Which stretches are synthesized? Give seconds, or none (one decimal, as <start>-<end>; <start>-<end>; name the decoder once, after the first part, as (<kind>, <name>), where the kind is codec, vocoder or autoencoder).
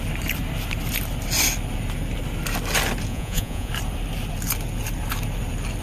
3.1-3.7 (vocoder, Vocos)